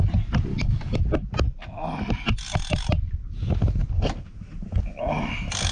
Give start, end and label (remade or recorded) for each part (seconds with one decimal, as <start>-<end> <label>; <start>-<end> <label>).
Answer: 0.0-0.5 recorded; 0.5-1.0 remade; 1.0-5.7 recorded